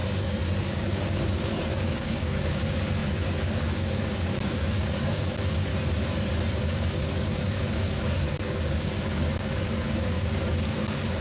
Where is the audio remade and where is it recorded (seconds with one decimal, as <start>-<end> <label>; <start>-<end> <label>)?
0.0-0.6 recorded; 0.6-5.7 remade; 5.7-6.5 recorded; 6.5-11.2 remade